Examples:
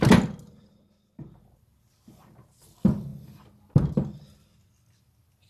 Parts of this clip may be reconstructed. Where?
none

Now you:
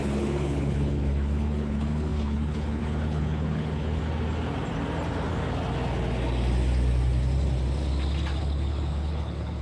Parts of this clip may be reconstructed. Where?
0.0-4.0 (codec, HILCodec); 8.4-9.6

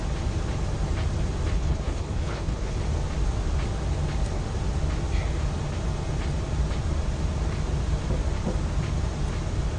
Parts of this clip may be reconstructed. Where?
1.5-2.8 (codec, HILCodec)

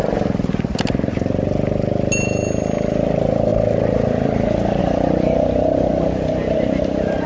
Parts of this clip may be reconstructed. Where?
none

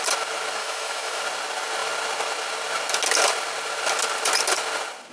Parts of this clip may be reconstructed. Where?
0.6-1.2 (autoencoder, DAC-VAE)

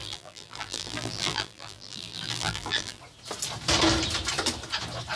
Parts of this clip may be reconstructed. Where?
0.0-3.0 (vocoder, BigVGAN v2)

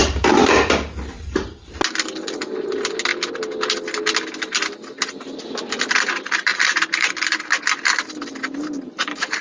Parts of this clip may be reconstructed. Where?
0.0-1.5 (vocoder, BigVGAN v2); 6.5-7.1